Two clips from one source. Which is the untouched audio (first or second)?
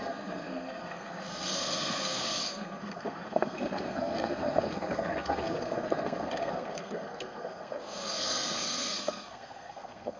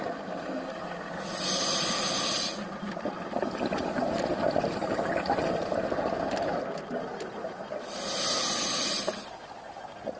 second